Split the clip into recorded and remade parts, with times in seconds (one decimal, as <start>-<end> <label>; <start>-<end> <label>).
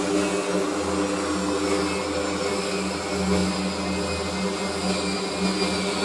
0.0-6.0 recorded